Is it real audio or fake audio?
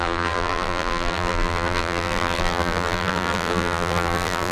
fake